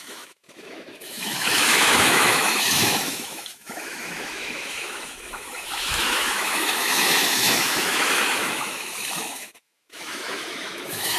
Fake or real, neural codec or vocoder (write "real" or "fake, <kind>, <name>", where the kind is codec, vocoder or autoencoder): fake, autoencoder, DAC-VAE